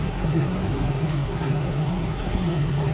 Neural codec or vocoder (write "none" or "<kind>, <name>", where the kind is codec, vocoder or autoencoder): codec, SNAC